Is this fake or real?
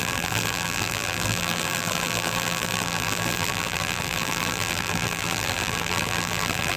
fake